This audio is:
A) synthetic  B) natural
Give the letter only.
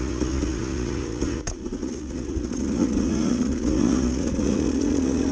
A